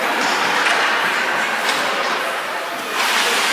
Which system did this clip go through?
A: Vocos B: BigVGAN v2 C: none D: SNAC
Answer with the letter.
B